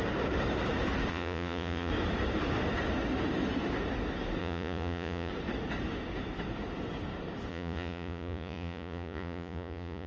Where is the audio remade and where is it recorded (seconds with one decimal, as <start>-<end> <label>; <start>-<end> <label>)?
0.0-1.1 recorded; 1.1-1.9 remade; 1.9-4.4 recorded; 4.4-5.3 remade; 5.3-7.5 recorded; 7.5-10.1 remade